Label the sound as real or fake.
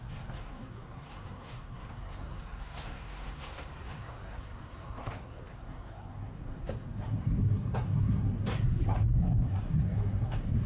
fake